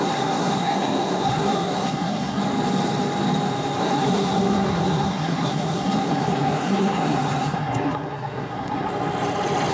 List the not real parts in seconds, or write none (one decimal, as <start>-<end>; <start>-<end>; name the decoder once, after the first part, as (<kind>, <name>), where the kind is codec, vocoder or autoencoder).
0.0-2.4 (codec, SNAC); 3.8-8.9